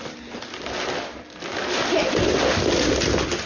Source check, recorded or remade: recorded